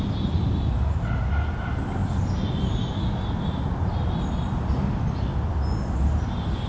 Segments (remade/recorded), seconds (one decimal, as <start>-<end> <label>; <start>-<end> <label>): 0.0-6.7 recorded